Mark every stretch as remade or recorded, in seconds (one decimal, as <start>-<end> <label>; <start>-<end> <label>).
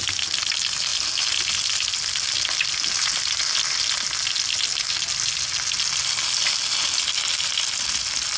0.0-8.4 recorded